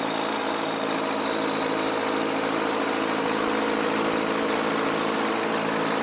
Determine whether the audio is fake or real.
real